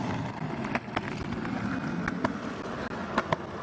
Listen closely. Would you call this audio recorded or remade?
recorded